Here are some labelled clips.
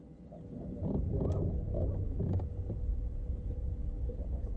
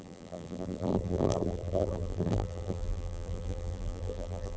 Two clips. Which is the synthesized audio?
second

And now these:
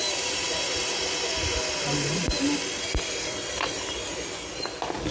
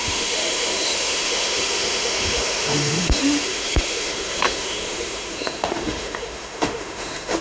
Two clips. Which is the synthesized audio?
second